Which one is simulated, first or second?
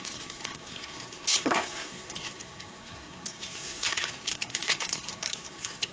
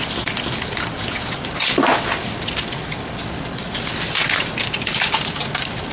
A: first